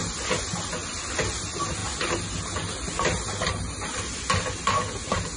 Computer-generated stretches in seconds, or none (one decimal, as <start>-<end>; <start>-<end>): none